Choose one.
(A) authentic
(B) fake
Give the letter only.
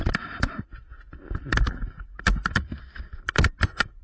A